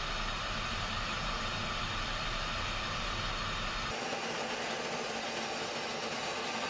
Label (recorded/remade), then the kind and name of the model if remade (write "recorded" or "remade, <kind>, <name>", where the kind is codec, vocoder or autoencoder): recorded